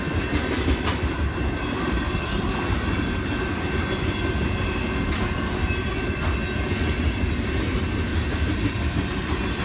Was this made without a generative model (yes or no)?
yes